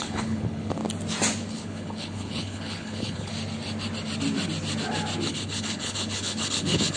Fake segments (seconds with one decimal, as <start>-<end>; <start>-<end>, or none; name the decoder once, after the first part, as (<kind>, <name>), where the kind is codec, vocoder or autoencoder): 0.0-0.8 (codec, HILCodec); 1.5-3.3; 5.3-7.0